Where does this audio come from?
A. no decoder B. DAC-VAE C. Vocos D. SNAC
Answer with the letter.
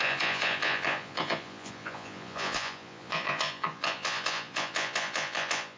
C